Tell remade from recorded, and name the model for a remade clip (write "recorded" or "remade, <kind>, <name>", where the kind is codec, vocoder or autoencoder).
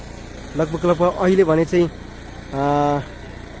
recorded